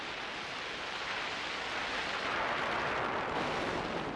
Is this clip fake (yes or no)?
no